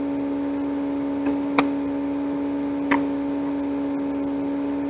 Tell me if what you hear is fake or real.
real